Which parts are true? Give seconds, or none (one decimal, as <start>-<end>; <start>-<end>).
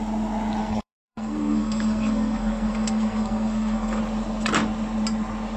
0.0-0.6; 4.0-5.6